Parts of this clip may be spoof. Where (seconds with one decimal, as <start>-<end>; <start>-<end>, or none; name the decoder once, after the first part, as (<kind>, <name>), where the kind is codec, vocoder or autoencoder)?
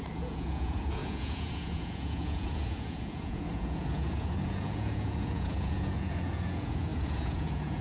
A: 0.0-7.8 (vocoder, Vocos)